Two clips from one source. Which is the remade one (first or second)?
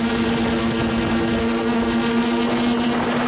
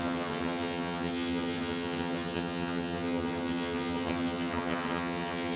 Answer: second